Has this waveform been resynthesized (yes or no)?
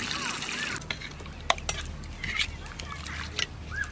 no